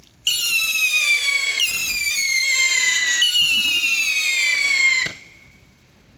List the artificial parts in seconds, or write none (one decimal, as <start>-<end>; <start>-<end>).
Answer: none